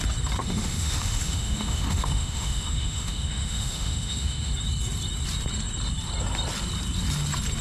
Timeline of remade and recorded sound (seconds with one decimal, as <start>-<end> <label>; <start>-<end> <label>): 0.0-0.4 recorded; 0.4-4.5 remade; 4.5-7.6 recorded